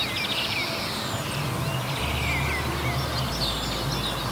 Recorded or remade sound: recorded